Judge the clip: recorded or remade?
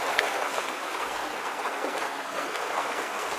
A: remade